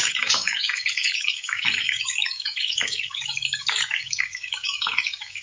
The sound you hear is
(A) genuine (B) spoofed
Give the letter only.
B